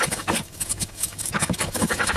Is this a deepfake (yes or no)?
yes